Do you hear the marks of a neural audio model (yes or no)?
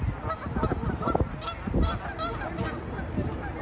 no